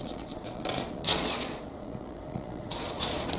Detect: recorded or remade remade